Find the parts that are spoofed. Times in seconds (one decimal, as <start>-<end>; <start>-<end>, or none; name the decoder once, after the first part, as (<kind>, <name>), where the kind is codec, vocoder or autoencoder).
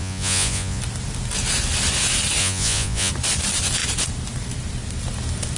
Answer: 0.0-0.8 (vocoder, Vocos); 2.4-3.1